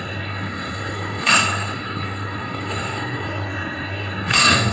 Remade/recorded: remade